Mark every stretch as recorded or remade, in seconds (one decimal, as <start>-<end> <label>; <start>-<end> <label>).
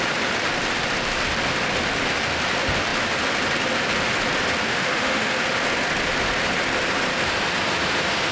0.0-4.7 recorded; 4.7-5.4 remade; 5.4-8.3 recorded